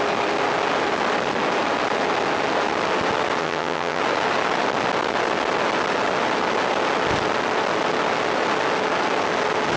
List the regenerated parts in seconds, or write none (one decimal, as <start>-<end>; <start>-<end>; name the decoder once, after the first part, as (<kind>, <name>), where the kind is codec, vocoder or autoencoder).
3.4-4.0 (vocoder, HiFi-GAN)